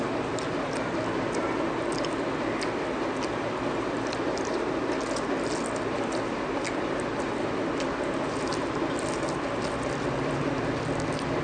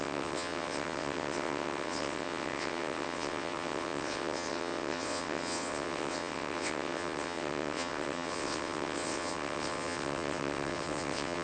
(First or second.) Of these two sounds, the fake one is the second